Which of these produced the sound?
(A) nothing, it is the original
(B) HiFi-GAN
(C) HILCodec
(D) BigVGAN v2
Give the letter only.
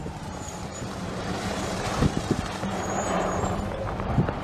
D